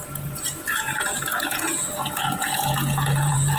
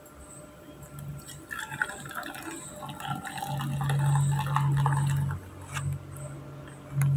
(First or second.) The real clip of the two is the second